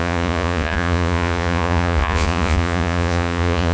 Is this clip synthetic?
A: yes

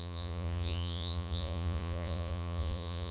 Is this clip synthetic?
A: yes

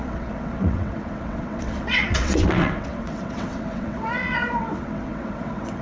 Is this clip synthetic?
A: yes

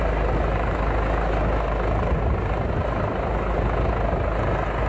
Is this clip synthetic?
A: no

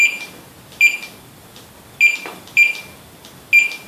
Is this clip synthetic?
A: no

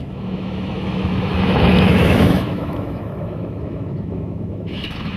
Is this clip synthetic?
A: yes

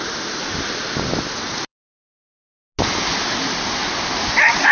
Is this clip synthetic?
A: no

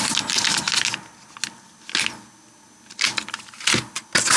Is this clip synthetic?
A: no